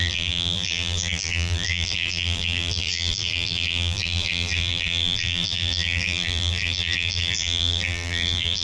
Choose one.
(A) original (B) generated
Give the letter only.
B